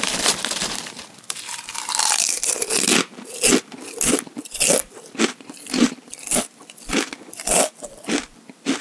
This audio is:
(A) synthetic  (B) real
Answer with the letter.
B